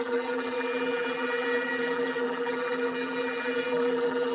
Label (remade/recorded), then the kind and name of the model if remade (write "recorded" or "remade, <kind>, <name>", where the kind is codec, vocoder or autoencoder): remade, vocoder, BigVGAN v2